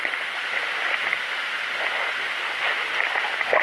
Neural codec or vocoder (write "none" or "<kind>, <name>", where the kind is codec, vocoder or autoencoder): none